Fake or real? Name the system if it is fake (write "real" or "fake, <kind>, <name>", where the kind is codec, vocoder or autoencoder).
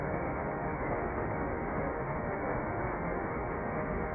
fake, autoencoder, DAC-VAE